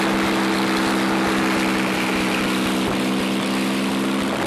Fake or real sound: real